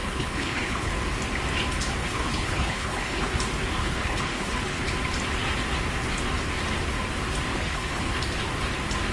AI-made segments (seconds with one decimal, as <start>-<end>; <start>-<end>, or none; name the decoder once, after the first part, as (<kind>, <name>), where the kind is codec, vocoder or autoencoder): 0.0-0.9 (codec, HILCodec); 2.0-3.4; 3.8-4.9; 7.5-8.1